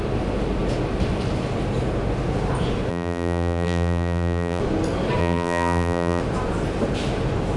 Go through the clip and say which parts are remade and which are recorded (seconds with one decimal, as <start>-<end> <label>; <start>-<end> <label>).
0.0-2.9 recorded; 2.9-4.6 remade; 4.6-5.2 recorded; 5.2-6.2 remade; 6.2-7.6 recorded